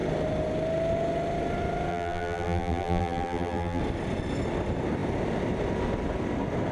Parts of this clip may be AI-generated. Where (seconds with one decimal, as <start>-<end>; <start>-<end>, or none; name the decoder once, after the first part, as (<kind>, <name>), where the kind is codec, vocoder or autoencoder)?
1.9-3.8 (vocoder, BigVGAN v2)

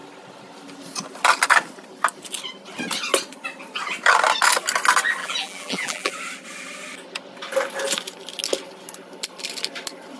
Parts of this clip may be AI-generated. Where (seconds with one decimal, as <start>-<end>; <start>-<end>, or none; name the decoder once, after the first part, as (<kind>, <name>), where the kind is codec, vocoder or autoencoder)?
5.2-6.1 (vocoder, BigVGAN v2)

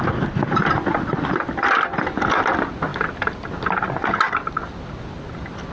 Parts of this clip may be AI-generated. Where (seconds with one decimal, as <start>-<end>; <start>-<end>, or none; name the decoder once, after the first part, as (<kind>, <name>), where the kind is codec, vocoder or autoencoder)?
none

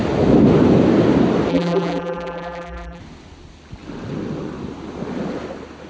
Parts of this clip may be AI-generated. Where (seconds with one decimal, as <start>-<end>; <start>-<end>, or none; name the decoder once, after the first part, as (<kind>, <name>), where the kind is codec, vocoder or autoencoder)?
1.5-3.0 (vocoder, BigVGAN v2)

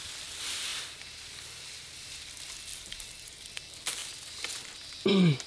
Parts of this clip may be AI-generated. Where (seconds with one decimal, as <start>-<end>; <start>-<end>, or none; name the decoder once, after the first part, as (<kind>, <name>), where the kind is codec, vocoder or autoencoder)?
2.7-3.5 (vocoder, BigVGAN v2)

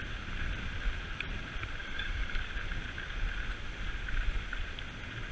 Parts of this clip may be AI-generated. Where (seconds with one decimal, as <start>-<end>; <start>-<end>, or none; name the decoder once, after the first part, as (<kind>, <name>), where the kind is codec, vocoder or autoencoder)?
1.8-2.4 (vocoder, BigVGAN v2)

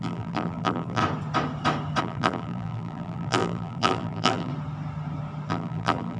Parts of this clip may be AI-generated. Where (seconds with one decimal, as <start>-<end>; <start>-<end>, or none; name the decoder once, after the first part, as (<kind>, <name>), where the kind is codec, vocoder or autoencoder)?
0.0-1.0 (vocoder, BigVGAN v2); 2.0-4.5; 5.5-6.2